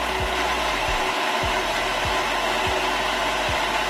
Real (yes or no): yes